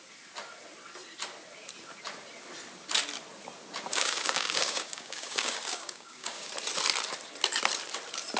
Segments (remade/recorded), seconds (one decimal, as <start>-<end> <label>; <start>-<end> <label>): 0.0-3.9 recorded; 3.9-6.5 remade; 6.5-8.4 recorded